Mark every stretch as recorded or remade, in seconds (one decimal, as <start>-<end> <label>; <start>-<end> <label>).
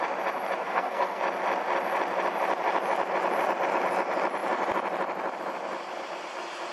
0.0-0.6 recorded; 0.6-1.2 remade; 1.2-6.7 recorded